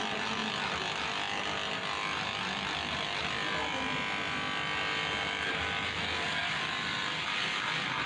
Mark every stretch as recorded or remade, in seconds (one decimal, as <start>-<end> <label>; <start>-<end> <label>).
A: 0.0-8.1 recorded